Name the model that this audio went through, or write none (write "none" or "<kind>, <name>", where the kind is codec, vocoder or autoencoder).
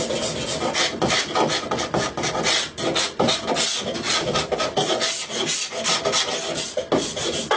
none